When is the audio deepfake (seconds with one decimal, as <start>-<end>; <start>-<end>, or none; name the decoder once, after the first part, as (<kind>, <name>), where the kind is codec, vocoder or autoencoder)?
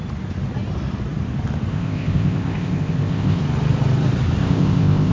1.7-3.4 (codec, ZipCodec); 4.4-5.1